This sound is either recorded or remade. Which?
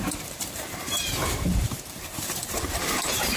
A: remade